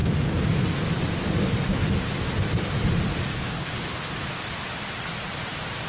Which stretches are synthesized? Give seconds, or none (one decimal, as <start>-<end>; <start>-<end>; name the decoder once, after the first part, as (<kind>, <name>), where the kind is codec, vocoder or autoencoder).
3.3-4.1 (codec, HILCodec)

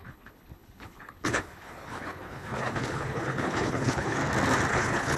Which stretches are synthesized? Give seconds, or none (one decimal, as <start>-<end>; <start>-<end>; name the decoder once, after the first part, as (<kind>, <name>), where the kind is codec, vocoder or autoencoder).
0.0-4.2 (codec, HILCodec); 4.7-5.2

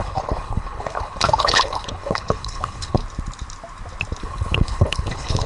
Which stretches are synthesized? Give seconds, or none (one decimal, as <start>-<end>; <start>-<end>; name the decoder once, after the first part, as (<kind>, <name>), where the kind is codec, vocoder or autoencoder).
0.0-3.0 (codec, HILCodec); 4.2-5.5